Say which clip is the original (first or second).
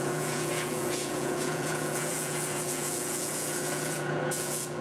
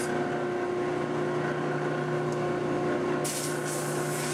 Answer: second